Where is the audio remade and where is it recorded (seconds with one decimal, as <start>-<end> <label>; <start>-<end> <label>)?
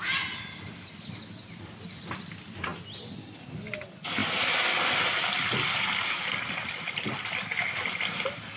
0.0-8.6 recorded